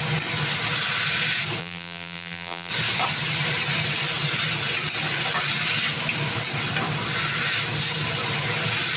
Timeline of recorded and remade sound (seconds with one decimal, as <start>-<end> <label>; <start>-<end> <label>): 0.0-1.6 recorded; 1.6-2.7 remade; 2.7-9.0 recorded